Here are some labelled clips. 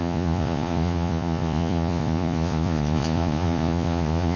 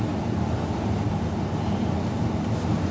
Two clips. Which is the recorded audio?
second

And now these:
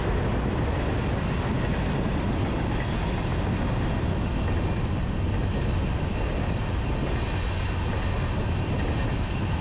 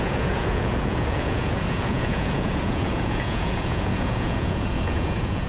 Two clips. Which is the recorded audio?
first